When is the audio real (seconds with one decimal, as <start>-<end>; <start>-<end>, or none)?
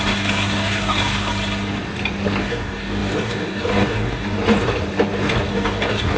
1.3-2.4; 4.4-5.5